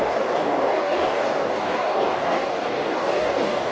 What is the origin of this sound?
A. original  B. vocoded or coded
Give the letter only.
B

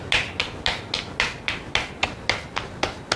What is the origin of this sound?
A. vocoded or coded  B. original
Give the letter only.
B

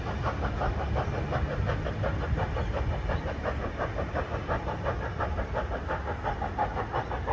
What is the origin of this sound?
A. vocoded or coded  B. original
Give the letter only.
B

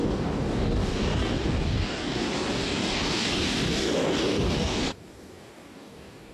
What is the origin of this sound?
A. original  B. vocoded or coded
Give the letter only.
B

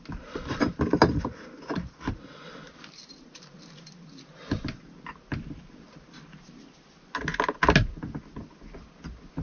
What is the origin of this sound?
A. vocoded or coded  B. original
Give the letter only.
B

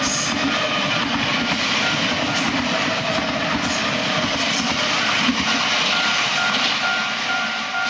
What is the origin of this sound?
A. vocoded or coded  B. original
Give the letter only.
B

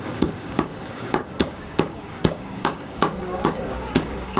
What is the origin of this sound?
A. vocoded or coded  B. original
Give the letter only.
A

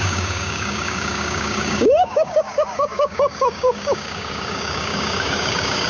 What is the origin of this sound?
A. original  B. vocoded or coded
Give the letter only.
B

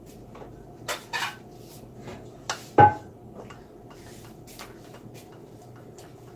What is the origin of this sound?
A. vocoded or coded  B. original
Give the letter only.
B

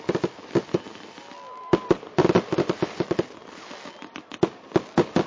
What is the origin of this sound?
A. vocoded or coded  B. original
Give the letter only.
B